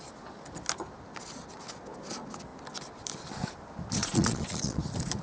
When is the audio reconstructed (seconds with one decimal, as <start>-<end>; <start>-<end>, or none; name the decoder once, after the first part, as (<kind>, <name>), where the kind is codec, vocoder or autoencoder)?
4.0-4.8 (vocoder, Vocos)